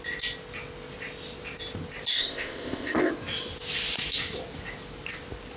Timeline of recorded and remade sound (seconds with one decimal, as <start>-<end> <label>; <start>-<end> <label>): 0.0-2.1 recorded; 2.1-3.1 remade; 3.1-5.6 recorded